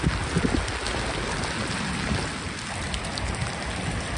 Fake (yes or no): no